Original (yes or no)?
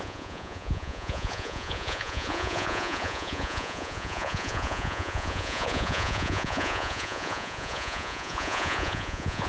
no